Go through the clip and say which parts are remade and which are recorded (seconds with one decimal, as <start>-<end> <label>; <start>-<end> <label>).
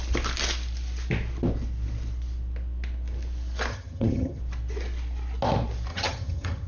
0.0-3.7 recorded; 3.7-4.4 remade; 4.4-5.9 recorded; 5.9-6.7 remade